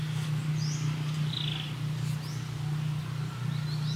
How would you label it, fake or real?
real